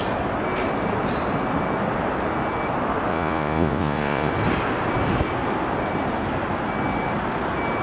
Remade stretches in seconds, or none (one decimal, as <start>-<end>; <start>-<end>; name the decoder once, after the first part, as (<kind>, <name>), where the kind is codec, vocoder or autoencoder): 3.1-4.3 (vocoder, Vocos)